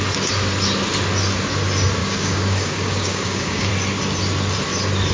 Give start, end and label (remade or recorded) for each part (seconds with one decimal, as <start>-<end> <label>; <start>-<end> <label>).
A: 0.0-2.0 recorded; 2.0-3.7 remade; 3.7-5.1 recorded

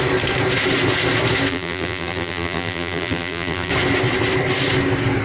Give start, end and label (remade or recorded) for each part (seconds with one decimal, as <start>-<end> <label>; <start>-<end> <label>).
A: 0.0-1.5 recorded; 1.5-3.7 remade; 3.7-5.2 recorded

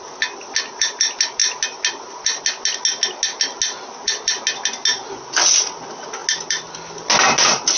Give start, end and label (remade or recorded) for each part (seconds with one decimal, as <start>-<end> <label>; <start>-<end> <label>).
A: 0.0-7.8 recorded

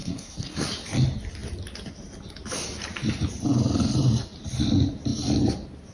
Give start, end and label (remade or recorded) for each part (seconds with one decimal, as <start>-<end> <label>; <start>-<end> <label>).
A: 0.0-0.7 remade; 0.7-5.9 recorded

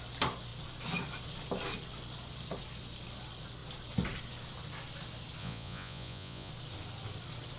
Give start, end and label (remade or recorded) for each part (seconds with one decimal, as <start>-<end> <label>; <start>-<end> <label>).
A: 0.0-5.4 recorded; 5.4-6.5 remade; 6.5-7.6 recorded

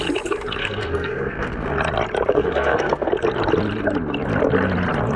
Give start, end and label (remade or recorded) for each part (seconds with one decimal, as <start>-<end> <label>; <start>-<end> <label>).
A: 0.0-0.6 recorded; 0.6-1.7 remade; 1.7-2.3 recorded; 2.3-3.1 remade; 3.1-5.2 recorded

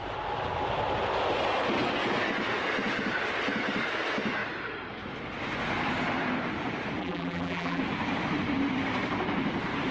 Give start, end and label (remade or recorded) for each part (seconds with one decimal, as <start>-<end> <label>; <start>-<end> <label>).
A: 0.0-7.0 recorded; 7.0-7.8 remade; 7.8-9.9 recorded

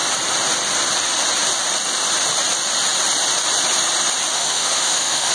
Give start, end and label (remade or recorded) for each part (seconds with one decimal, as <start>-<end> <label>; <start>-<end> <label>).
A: 0.0-4.3 recorded; 4.3-5.3 remade